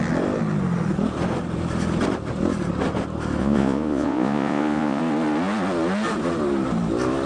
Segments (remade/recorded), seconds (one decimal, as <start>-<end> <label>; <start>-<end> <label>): 0.0-3.4 recorded; 3.4-5.0 remade; 5.0-7.3 recorded